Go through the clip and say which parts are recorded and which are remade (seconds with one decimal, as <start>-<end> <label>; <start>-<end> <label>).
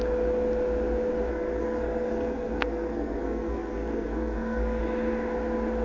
0.0-1.3 recorded; 1.3-4.8 remade; 4.8-5.8 recorded